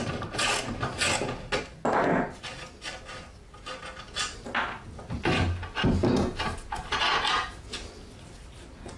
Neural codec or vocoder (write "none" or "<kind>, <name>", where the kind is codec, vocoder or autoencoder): none